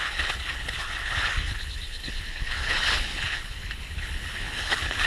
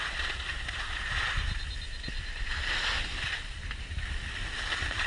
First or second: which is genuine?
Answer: second